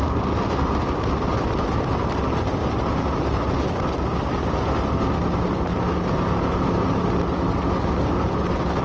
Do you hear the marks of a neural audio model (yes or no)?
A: no